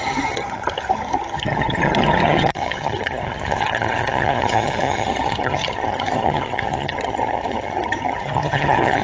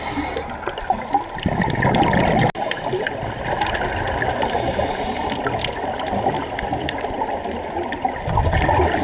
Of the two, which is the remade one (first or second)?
first